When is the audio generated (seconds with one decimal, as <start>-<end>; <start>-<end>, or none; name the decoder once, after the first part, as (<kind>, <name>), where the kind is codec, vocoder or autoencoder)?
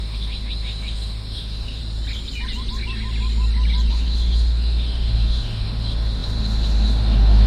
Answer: 0.0-1.8 (autoencoder, DAC-VAE); 3.9-7.5